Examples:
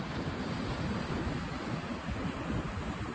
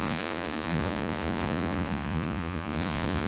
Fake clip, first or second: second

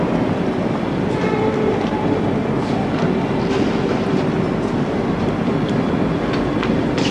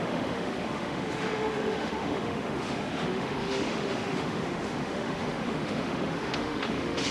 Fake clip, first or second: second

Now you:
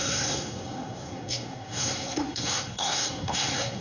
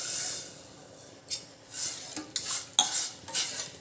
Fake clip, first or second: first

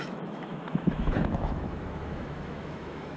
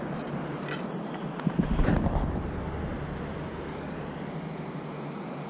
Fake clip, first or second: first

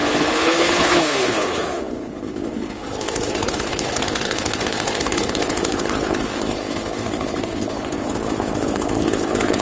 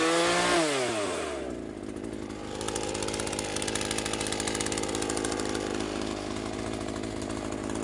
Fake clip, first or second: first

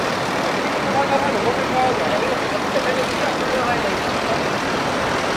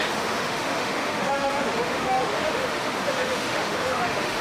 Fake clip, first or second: second